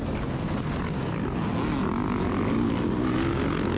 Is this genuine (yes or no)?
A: yes